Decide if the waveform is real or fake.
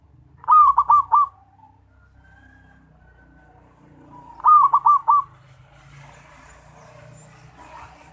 real